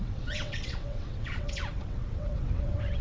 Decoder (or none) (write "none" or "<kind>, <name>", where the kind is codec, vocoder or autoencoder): vocoder, WaveNeXt